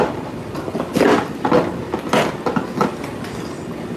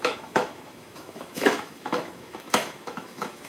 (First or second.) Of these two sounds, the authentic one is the first